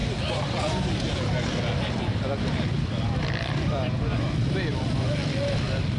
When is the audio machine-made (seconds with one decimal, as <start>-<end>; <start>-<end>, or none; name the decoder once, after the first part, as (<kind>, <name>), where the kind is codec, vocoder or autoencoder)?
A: 2.1-4.6 (vocoder, BigVGAN v2)